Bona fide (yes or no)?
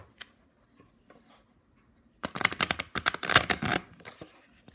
yes